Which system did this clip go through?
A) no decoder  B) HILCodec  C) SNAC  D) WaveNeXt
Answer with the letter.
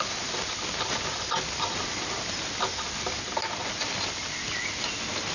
A